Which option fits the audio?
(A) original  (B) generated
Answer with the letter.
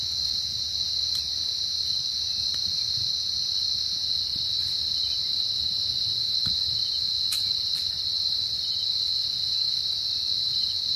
A